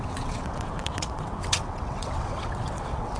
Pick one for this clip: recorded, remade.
remade